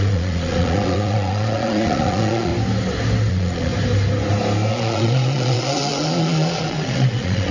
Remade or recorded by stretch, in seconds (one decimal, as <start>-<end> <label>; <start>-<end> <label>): 0.0-2.5 remade; 2.5-3.3 recorded; 3.3-3.7 remade; 3.7-4.7 recorded; 4.7-7.5 remade